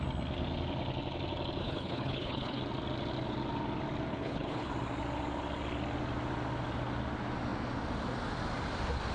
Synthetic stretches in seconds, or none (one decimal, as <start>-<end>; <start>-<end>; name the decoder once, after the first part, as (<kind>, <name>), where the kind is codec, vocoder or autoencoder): 1.6-2.6 (codec, HILCodec); 4.1-4.7